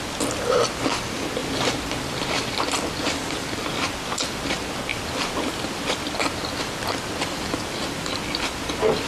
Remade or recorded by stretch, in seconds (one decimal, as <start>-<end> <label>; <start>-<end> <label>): 0.0-1.4 recorded; 1.4-3.4 remade; 3.4-4.9 recorded; 4.9-5.9 remade; 5.9-9.1 recorded